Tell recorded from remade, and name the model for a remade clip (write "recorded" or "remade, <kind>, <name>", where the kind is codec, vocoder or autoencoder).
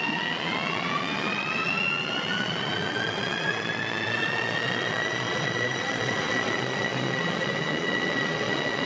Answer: remade, vocoder, Vocos